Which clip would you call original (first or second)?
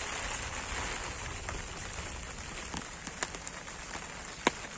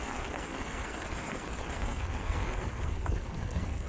first